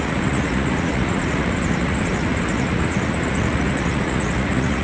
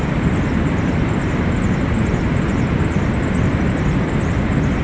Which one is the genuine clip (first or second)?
second